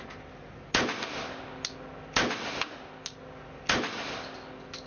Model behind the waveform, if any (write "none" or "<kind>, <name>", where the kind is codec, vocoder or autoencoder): none